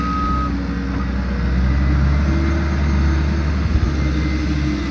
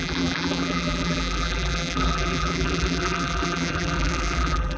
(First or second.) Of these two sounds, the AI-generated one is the second